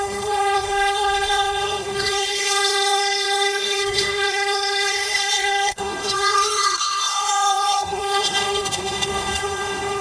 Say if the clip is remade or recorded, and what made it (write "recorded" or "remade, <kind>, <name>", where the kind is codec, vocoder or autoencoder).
remade, codec, SNAC